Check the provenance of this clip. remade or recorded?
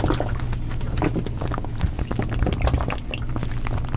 recorded